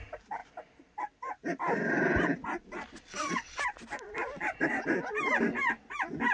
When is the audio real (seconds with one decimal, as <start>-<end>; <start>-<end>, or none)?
0.0-3.1; 3.6-6.3